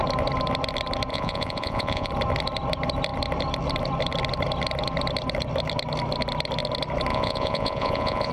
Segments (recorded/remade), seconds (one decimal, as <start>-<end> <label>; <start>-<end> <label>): 0.0-1.1 recorded; 1.1-2.1 remade; 2.1-7.1 recorded; 7.1-8.3 remade